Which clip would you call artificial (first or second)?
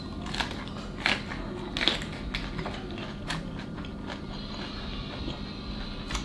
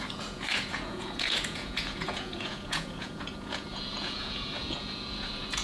second